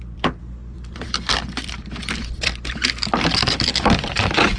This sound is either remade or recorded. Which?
remade